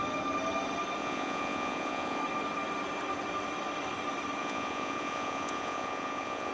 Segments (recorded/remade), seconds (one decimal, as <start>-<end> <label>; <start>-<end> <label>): 0.0-1.0 recorded; 1.0-2.2 remade; 2.2-4.4 recorded; 4.4-6.5 remade